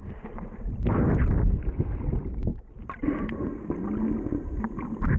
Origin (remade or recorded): recorded